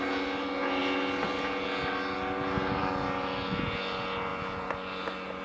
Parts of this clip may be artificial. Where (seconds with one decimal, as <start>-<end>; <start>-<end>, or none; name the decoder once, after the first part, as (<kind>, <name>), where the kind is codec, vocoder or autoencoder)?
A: none